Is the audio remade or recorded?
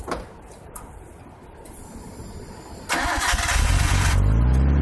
recorded